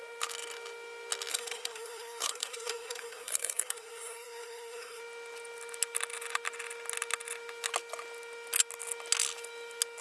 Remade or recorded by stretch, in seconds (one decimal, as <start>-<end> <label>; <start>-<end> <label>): 0.0-1.3 recorded; 1.3-5.0 remade; 5.0-10.0 recorded